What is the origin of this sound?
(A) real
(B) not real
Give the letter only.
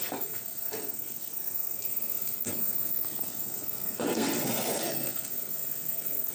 B